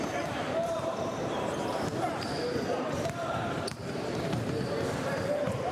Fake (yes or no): yes